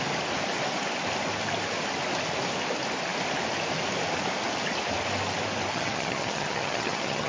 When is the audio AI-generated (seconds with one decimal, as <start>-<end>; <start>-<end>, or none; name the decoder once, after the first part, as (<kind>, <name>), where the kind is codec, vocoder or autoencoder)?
5.7-7.3 (vocoder, HiFi-GAN)